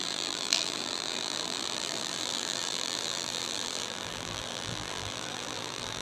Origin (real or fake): fake